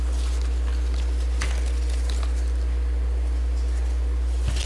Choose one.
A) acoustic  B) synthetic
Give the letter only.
A